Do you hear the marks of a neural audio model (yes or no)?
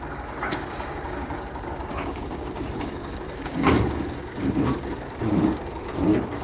yes